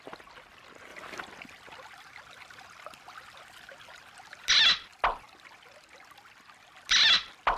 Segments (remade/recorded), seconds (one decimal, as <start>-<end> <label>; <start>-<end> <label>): 0.0-7.6 recorded